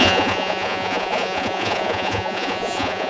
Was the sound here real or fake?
fake